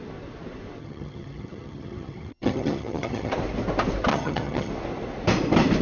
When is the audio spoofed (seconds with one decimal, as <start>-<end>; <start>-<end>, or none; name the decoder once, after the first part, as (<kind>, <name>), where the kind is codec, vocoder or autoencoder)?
0.8-3.3 (vocoder, HiFi-GAN); 4.1-4.7